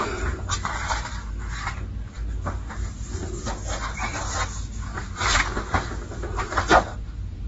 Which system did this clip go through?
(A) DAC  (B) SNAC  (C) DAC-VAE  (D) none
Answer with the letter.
D